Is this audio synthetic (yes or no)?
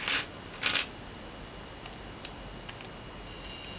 no